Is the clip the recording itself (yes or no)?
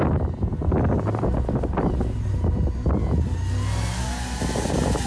yes